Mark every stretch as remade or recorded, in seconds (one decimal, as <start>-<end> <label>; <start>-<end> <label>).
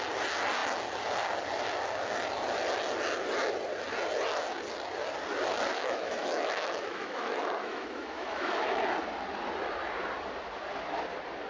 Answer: 0.0-5.7 recorded; 5.7-8.8 remade; 8.8-11.5 recorded